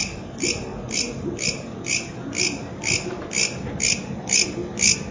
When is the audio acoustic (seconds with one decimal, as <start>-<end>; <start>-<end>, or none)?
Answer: 0.0-5.1